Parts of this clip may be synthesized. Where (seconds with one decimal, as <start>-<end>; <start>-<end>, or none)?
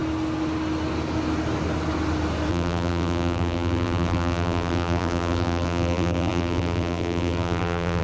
2.5-8.0